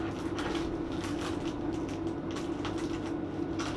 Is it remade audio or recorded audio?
recorded